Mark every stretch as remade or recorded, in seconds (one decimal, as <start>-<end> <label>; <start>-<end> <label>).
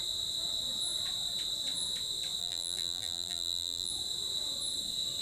0.0-2.4 recorded; 2.4-3.9 remade; 3.9-5.2 recorded